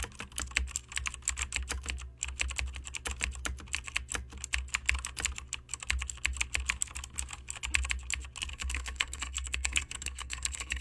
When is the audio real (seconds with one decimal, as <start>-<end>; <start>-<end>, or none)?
0.0-8.5